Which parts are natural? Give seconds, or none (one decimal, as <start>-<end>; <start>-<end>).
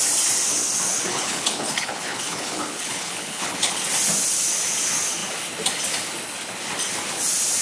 0.0-0.9; 3.8-7.6